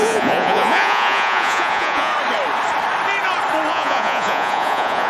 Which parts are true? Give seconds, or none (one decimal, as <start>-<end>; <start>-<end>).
2.1-3.7